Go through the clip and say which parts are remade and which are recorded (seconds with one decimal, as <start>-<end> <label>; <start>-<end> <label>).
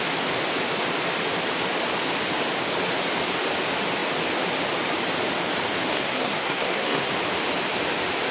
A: 0.0-5.9 recorded; 5.9-7.1 remade; 7.1-8.3 recorded